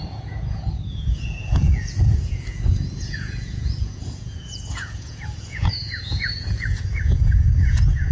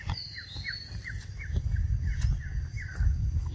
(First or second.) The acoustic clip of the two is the second